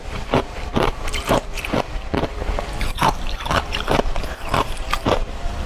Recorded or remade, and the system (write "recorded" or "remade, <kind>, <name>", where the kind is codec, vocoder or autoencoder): remade, vocoder, BigVGAN v2